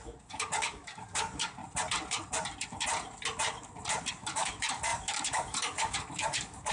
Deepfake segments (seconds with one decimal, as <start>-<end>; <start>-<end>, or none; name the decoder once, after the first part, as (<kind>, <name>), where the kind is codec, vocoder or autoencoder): 0.0-1.6 (codec, DAC); 4.1-6.7